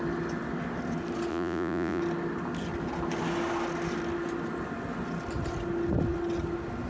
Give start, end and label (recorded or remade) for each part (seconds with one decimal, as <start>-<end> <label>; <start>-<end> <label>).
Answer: 0.0-1.3 recorded; 1.3-2.0 remade; 2.0-6.9 recorded